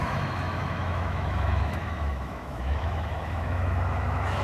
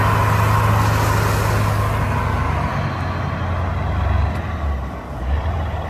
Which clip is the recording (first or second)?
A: second